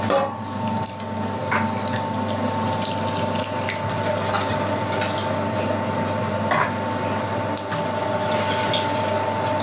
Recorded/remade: recorded